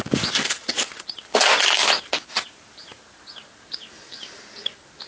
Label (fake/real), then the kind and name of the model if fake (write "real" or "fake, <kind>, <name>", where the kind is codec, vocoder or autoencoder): real